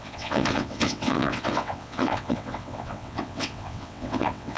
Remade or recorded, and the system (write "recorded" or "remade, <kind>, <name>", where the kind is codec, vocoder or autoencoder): remade, vocoder, WaveNeXt